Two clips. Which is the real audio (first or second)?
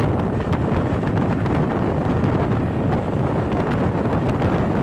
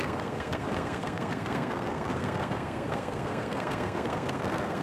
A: first